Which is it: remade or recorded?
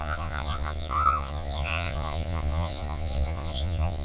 remade